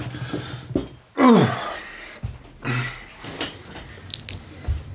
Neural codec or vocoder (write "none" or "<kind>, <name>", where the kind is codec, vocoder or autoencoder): none